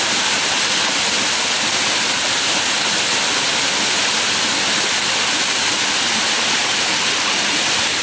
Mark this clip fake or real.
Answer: real